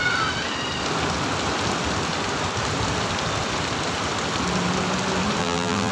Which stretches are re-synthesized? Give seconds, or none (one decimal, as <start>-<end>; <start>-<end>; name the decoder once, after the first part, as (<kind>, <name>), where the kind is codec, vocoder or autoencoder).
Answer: 5.4-5.9 (vocoder, BigVGAN v2)